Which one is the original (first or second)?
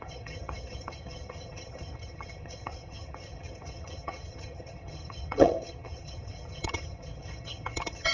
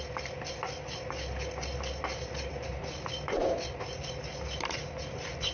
second